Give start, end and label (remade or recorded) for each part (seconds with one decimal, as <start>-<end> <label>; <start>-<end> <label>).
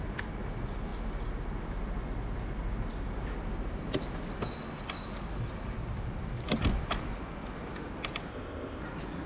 0.0-8.3 recorded; 8.3-8.8 remade; 8.8-9.3 recorded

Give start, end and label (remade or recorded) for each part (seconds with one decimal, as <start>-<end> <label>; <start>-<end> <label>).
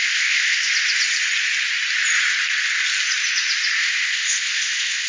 0.0-0.7 remade; 0.7-3.8 recorded; 3.8-5.1 remade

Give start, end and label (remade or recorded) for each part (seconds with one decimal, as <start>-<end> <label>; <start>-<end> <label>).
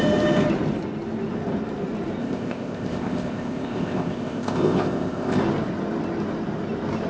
0.0-2.2 recorded; 2.2-5.4 remade; 5.4-7.1 recorded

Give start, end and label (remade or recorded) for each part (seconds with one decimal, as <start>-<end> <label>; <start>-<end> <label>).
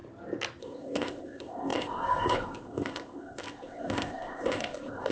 0.0-0.6 recorded; 0.6-5.1 remade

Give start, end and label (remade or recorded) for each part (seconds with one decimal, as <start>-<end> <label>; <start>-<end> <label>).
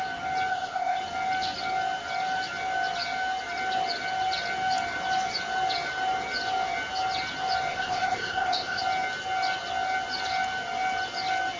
0.0-0.5 recorded; 0.5-1.0 remade; 1.0-7.7 recorded; 7.7-8.8 remade; 8.8-11.6 recorded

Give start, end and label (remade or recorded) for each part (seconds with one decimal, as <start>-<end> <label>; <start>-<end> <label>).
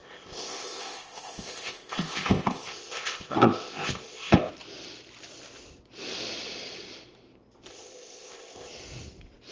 0.0-4.5 remade; 4.5-7.7 recorded; 7.7-8.7 remade; 8.7-9.5 recorded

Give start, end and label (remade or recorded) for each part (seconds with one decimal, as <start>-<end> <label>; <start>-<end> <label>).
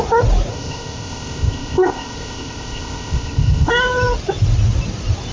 0.0-0.5 recorded; 0.5-3.7 remade; 3.7-5.3 recorded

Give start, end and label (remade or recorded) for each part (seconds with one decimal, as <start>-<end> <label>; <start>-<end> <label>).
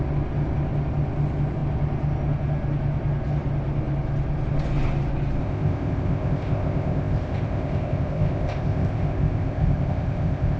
0.0-5.4 recorded; 5.4-10.6 remade